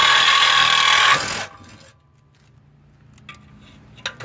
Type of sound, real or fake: real